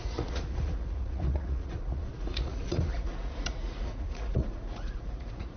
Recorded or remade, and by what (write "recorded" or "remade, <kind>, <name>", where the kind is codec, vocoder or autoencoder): remade, vocoder, Vocos